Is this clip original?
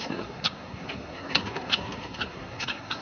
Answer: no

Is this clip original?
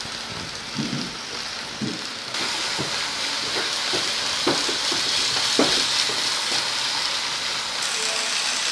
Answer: yes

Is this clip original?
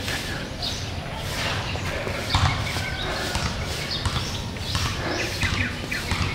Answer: yes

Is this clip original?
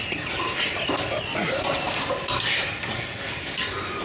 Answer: yes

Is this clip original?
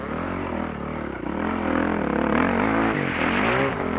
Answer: yes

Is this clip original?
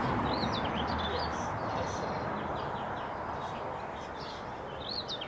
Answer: yes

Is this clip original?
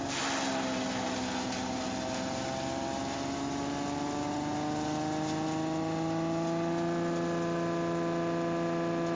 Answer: yes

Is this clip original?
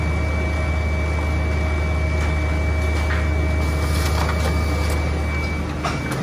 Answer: yes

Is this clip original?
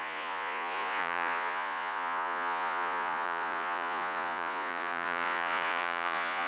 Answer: no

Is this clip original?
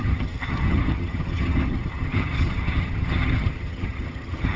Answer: no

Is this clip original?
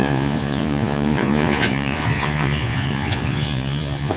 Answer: no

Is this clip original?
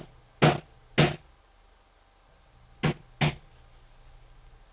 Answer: yes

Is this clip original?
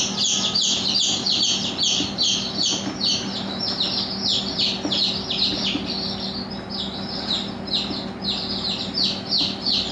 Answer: yes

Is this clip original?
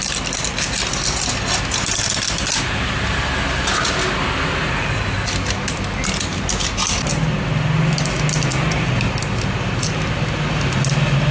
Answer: yes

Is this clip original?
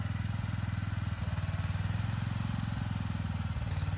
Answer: yes